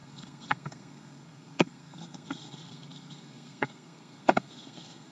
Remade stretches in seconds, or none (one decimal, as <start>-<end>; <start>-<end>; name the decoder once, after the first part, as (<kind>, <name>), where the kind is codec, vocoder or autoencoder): 0.0-5.1 (codec, SNAC)